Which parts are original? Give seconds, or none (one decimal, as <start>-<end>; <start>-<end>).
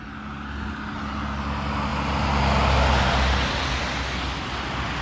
0.0-5.0